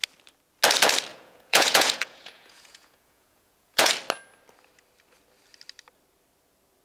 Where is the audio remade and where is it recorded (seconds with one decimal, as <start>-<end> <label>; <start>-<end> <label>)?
0.0-1.1 recorded; 1.1-3.9 remade; 3.9-6.8 recorded